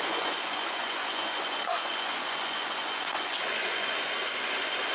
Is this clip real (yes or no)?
no